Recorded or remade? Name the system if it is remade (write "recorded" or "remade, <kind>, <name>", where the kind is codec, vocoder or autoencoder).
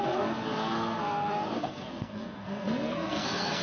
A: remade, codec, SNAC